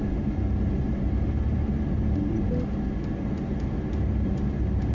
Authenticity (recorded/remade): recorded